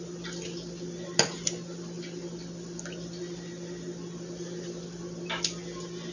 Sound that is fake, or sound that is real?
real